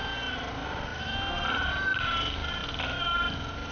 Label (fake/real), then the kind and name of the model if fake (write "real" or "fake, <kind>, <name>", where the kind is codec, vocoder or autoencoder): real